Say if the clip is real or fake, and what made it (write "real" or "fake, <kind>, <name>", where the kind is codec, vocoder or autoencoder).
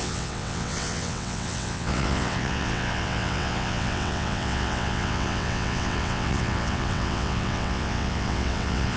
fake, vocoder, WaveNeXt